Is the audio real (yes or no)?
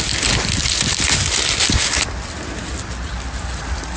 yes